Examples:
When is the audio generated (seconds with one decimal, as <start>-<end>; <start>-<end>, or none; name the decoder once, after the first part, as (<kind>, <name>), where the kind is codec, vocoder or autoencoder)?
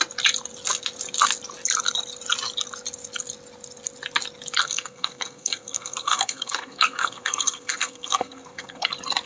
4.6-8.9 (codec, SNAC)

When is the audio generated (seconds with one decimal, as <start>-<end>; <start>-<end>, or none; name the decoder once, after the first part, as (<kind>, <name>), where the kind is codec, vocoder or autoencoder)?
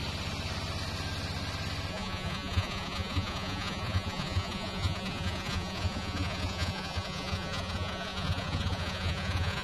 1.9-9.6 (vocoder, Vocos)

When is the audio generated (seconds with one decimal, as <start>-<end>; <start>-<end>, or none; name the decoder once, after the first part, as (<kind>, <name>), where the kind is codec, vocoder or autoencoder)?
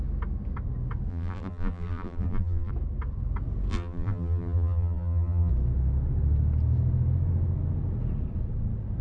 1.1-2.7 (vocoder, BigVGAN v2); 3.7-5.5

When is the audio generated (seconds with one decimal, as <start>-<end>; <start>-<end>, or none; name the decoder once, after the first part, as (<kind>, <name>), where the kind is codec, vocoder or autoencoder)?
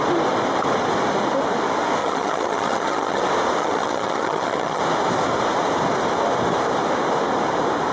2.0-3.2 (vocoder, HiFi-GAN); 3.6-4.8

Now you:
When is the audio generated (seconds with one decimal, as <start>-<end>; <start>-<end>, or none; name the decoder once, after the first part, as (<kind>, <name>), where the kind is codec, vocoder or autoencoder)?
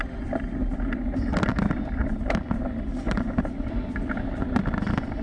2.0-5.2 (vocoder, BigVGAN v2)